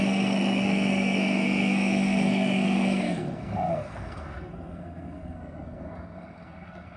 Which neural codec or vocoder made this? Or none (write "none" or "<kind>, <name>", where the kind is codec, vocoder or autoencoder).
codec, SNAC